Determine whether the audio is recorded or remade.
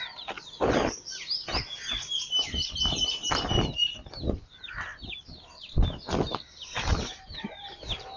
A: recorded